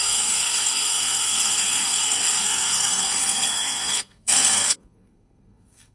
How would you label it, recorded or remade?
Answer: remade